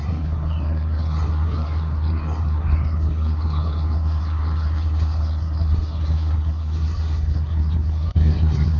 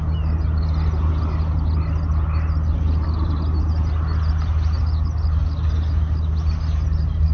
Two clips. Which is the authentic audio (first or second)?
second